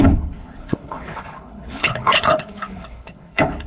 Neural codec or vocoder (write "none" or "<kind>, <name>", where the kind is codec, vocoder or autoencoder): codec, HILCodec